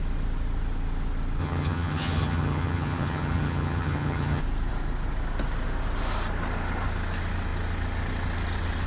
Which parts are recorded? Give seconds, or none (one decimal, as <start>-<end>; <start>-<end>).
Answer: 0.0-1.4; 4.4-8.9

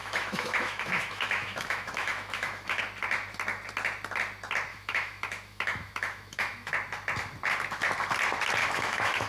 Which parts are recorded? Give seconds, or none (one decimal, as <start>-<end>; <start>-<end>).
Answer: 2.8-4.7; 6.7-8.6

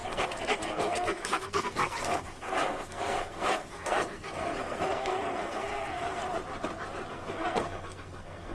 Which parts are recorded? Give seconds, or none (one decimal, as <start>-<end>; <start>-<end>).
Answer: 6.2-7.1